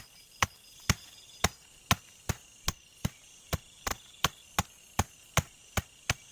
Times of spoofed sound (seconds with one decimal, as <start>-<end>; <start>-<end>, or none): none